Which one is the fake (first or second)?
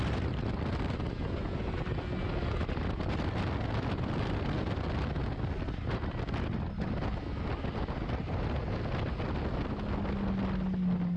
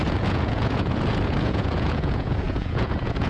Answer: second